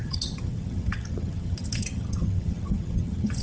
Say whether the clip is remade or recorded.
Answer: remade